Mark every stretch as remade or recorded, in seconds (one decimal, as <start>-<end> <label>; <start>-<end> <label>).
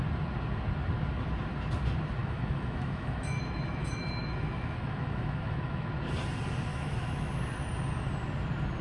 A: 0.0-2.2 recorded; 2.2-5.9 remade; 5.9-6.7 recorded; 6.7-7.3 remade; 7.3-8.8 recorded